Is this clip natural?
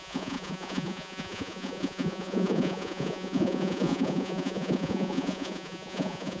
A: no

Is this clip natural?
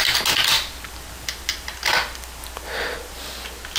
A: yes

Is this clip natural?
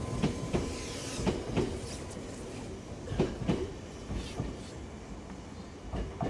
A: yes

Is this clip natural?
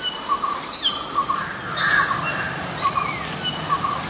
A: yes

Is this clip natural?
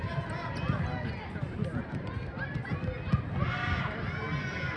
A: yes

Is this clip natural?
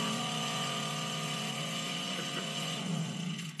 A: no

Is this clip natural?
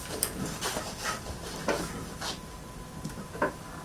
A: yes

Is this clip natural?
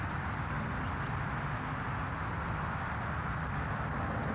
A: yes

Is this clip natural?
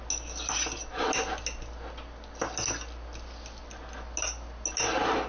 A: yes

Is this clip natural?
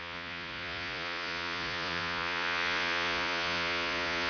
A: no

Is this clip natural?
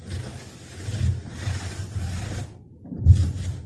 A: yes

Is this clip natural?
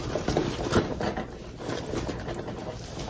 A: no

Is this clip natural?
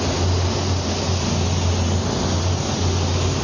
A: yes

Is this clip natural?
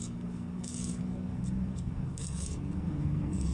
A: no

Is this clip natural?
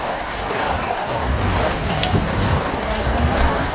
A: no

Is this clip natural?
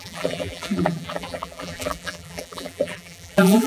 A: no